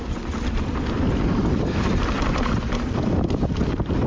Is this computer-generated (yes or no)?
yes